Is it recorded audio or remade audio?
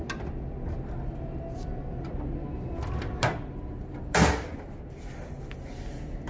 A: recorded